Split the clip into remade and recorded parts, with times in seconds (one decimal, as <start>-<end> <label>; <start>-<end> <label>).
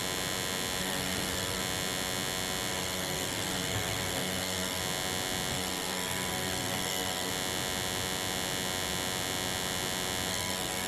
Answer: 0.0-0.8 recorded; 0.8-1.6 remade; 1.6-2.7 recorded; 2.7-4.8 remade; 4.8-5.5 recorded; 5.5-7.3 remade; 7.3-10.3 recorded; 10.3-10.9 remade